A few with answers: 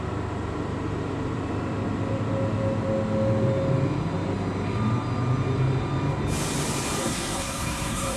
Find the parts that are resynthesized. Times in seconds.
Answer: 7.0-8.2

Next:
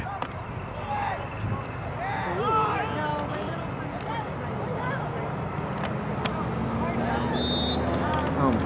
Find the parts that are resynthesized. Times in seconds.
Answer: none

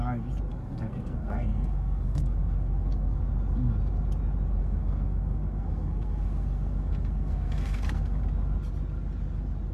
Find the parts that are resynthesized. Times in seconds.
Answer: 0.5-3.2; 4.6-8.2

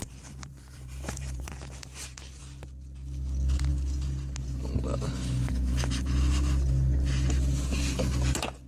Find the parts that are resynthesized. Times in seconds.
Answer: 0.0-2.4

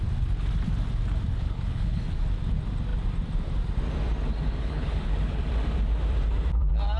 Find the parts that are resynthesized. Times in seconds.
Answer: 1.3-2.0; 4.6-5.4

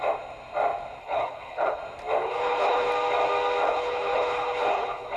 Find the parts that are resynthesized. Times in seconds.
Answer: 1.0-1.8; 2.2-2.9; 3.7-5.2

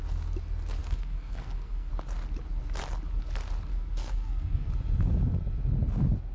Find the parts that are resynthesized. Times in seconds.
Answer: 0.8-1.9; 3.7-4.7

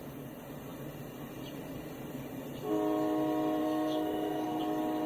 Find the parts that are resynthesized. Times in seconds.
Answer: 3.6-4.6